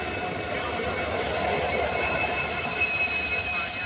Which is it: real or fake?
real